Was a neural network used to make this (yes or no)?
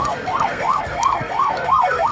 yes